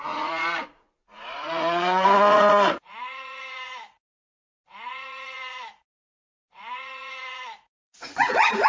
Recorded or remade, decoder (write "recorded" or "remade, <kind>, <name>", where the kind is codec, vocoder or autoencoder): remade, vocoder, Vocos